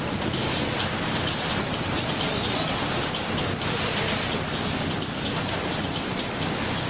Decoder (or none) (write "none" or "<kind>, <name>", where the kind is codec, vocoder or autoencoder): none